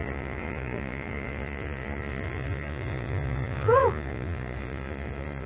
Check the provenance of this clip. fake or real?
fake